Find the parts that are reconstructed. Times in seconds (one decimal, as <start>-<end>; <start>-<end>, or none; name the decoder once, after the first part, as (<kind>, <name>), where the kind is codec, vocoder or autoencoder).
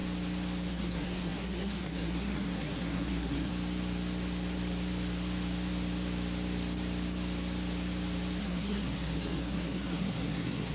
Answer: 0.7-3.5 (codec, SNAC); 8.4-10.7